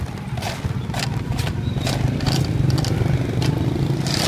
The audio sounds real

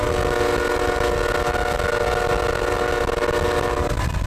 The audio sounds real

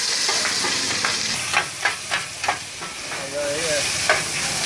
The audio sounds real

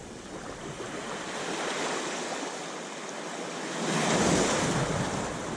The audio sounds real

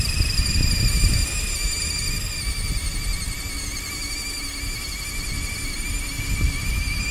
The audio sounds real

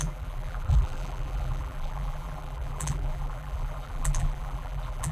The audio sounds fake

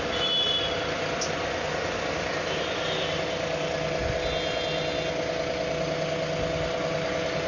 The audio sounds real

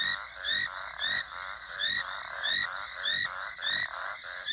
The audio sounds real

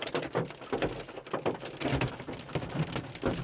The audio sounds real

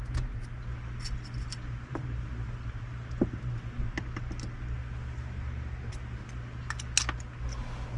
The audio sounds real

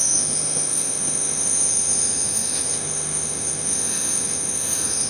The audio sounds fake